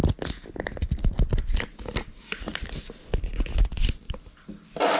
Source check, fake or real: real